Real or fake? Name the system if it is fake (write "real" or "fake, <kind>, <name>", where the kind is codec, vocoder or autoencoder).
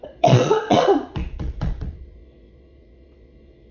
fake, vocoder, Vocos